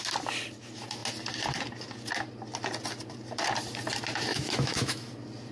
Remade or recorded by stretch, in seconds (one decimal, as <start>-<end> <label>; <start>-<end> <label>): 0.0-4.3 recorded; 4.3-5.1 remade; 5.1-5.5 recorded